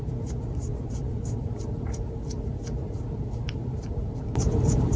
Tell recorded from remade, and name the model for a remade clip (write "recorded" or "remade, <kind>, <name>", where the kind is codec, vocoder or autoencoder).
remade, vocoder, BigVGAN v2